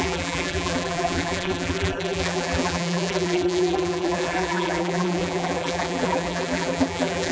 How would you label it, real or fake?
fake